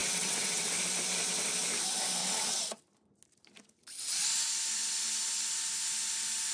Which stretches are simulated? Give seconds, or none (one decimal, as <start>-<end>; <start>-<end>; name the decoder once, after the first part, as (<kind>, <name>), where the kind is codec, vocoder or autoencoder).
0.0-0.7 (vocoder, WaveNeXt); 2.2-2.8